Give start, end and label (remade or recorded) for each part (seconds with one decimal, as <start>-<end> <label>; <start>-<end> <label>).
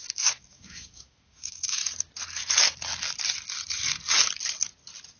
0.0-1.8 remade; 1.8-5.2 recorded